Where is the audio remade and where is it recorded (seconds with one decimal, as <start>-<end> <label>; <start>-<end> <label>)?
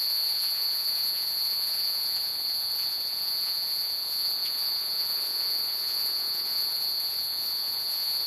0.0-8.3 remade